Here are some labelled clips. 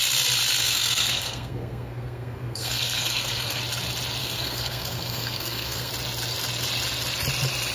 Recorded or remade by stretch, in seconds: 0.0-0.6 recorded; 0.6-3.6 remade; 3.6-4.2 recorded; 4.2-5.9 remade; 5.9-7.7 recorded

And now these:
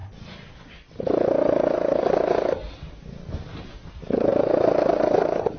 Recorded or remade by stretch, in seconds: 0.0-5.6 recorded